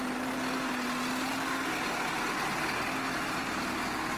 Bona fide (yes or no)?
yes